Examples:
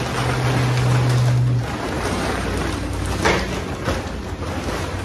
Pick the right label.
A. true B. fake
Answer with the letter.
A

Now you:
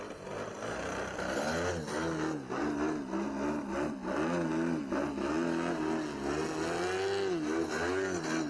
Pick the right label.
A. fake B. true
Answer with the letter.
B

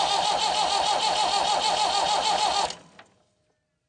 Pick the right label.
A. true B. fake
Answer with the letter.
A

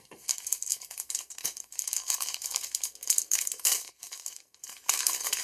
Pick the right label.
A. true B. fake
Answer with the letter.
B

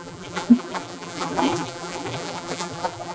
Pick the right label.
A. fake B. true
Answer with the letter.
A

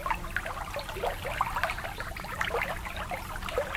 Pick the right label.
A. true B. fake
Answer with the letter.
A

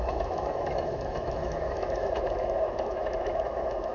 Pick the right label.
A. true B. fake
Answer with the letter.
B